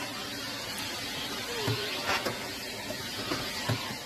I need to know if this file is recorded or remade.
recorded